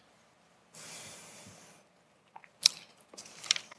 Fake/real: real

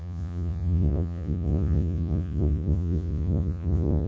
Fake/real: fake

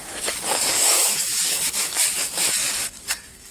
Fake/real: fake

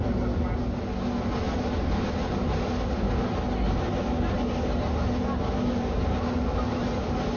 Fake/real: real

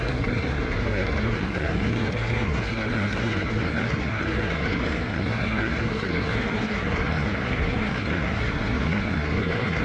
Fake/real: fake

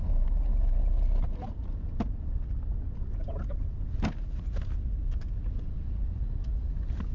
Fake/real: real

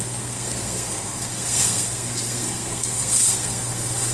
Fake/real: fake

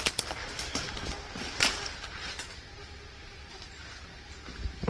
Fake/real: real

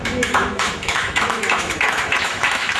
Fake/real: fake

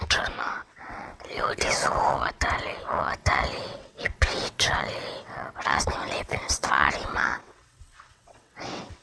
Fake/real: fake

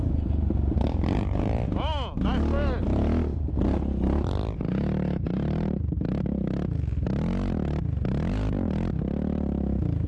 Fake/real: real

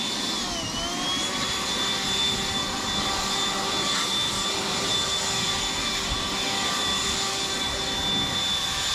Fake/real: real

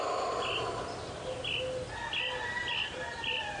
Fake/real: real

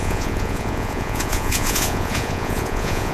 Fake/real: fake